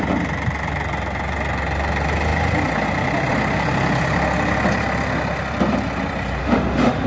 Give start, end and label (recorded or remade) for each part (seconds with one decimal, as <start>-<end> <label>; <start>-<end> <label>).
0.0-6.4 recorded; 6.4-7.1 remade